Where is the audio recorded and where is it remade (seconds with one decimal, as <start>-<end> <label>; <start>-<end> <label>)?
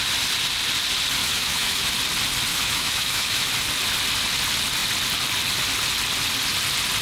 0.0-1.2 recorded; 1.2-1.9 remade; 1.9-2.5 recorded; 2.5-3.5 remade; 3.5-7.0 recorded